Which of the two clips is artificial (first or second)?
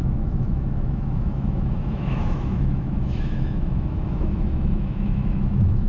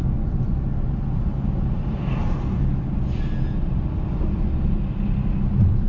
first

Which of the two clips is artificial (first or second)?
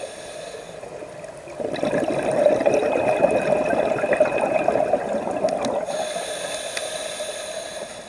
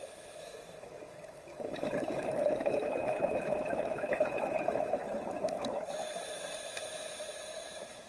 second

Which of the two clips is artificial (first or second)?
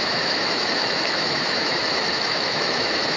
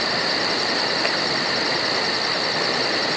first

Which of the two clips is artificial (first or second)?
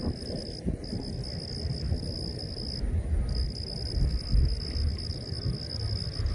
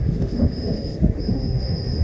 second